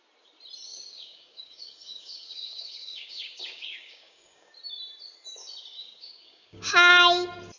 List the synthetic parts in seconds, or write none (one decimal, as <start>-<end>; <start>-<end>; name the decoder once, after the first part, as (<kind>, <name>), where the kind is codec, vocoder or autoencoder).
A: 0.7-4.5 (codec, DAC); 5.8-6.9